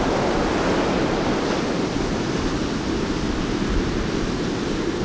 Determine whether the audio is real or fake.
real